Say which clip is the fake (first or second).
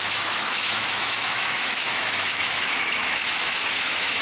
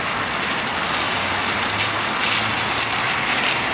first